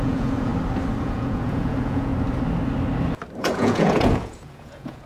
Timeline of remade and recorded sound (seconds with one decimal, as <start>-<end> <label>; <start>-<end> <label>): 0.0-0.5 remade; 0.5-1.0 recorded; 1.0-2.1 remade; 2.1-3.4 recorded; 3.4-5.1 remade